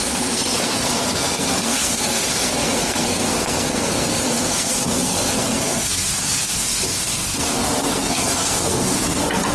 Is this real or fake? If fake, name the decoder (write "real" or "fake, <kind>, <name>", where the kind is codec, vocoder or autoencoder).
fake, codec, SNAC